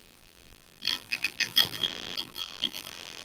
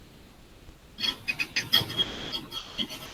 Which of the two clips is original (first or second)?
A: second